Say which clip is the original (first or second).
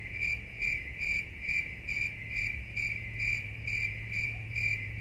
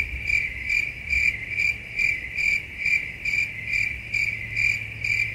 second